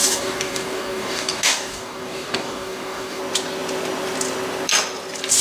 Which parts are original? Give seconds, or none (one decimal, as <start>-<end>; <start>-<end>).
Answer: 3.2-5.4